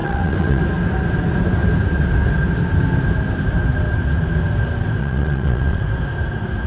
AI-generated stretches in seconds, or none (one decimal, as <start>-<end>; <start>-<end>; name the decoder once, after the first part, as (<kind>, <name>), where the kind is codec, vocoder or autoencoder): 0.0-0.6 (vocoder, WaveNeXt); 5.0-5.8